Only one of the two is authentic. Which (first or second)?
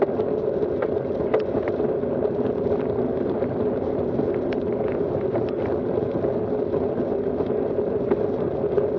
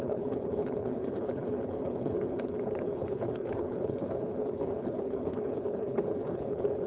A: first